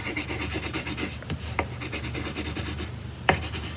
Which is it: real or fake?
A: real